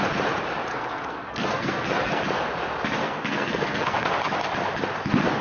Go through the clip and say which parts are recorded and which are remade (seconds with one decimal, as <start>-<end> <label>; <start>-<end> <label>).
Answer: 0.0-0.7 recorded; 0.7-2.2 remade; 2.2-3.0 recorded; 3.0-4.1 remade; 4.1-5.4 recorded